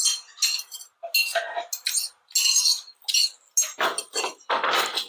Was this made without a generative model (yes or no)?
yes